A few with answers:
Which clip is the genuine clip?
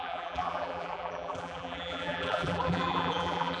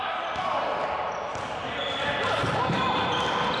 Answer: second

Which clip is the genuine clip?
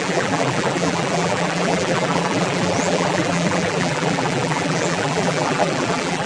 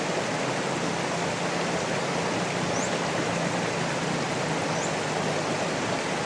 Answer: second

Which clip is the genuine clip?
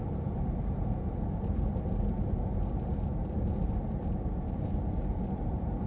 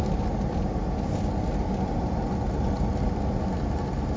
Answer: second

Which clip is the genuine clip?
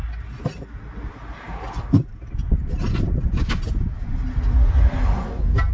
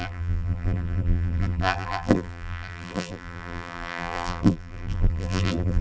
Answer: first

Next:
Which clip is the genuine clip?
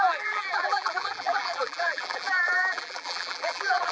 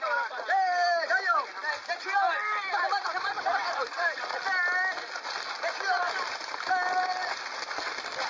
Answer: second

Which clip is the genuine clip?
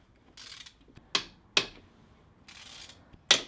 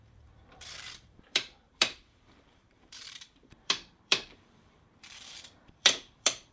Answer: first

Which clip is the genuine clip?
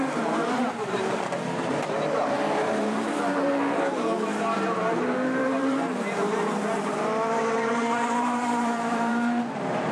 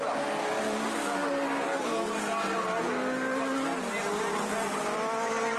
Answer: second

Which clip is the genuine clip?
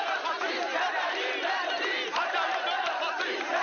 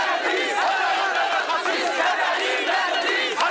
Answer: second